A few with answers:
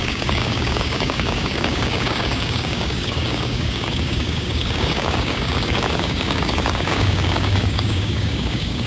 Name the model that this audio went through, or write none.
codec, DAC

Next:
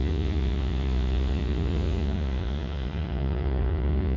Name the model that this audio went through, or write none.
vocoder, Vocos